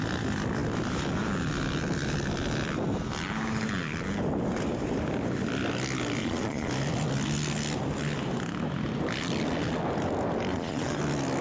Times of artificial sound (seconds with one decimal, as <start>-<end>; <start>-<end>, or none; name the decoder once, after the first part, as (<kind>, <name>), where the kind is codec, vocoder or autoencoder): 6.2-6.7 (vocoder, Vocos); 10.5-11.0

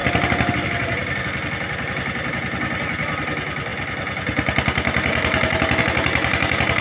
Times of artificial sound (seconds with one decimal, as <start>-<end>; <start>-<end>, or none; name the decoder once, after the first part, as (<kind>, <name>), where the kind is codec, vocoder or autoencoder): none